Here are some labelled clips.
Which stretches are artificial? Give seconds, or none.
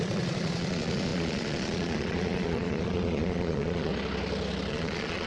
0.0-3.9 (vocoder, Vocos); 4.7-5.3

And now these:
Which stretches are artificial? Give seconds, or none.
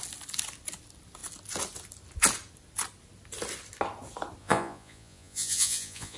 4.4-6.2 (vocoder, Vocos)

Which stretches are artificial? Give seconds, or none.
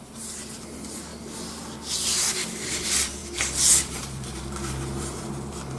0.0-1.1 (vocoder, BigVGAN v2); 1.9-5.8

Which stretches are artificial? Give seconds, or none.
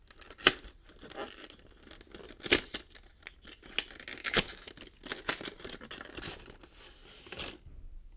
4.2-4.7 (autoencoder, DAC-VAE)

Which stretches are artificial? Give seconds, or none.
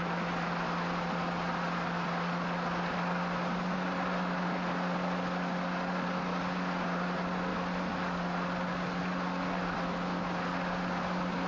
none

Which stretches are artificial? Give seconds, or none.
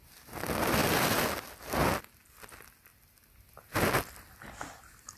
none